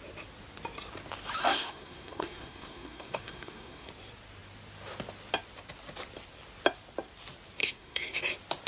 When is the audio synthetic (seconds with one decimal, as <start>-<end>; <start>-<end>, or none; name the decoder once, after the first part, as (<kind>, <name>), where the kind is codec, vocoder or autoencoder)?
1.4-3.9 (codec, SNAC); 7.6-8.2